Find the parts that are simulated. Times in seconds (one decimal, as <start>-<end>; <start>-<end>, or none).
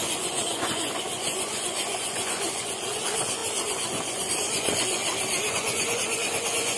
0.0-5.0; 5.5-6.8